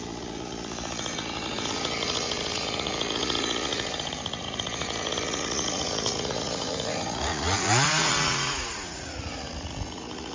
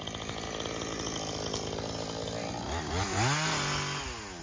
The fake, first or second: first